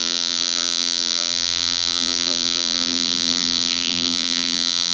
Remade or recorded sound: remade